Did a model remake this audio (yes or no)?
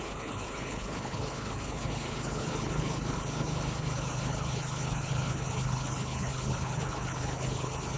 yes